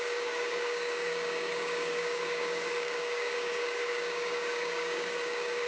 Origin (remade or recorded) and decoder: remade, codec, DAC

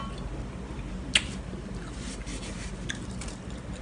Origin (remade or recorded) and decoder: recorded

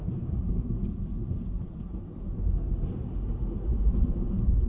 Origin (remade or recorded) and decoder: recorded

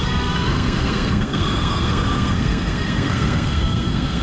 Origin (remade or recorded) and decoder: remade, codec, SNAC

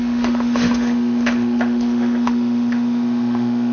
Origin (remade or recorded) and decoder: remade, autoencoder, DAC-VAE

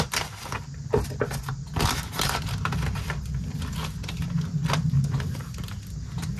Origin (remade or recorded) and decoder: recorded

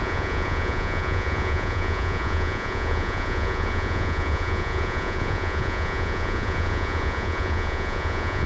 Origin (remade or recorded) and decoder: remade, vocoder, Vocos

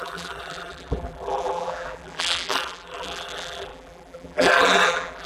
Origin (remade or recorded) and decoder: remade, vocoder, BigVGAN v2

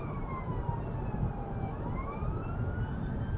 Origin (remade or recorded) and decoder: recorded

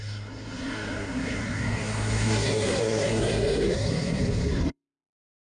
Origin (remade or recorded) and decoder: remade, codec, SNAC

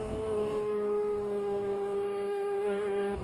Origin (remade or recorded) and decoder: remade, codec, DAC